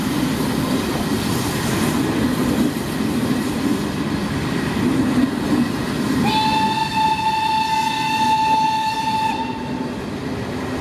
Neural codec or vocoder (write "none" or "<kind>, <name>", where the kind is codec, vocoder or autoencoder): none